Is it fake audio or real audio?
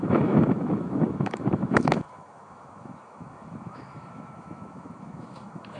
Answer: fake